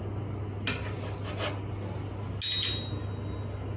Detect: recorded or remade recorded